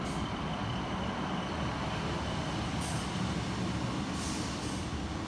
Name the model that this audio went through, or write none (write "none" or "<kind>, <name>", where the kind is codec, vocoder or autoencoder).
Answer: none